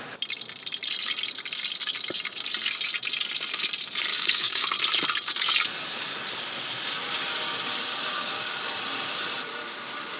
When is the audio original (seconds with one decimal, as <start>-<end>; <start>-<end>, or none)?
0.0-4.1; 4.6-8.1; 8.7-10.2